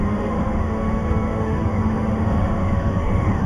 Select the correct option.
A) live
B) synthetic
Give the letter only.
B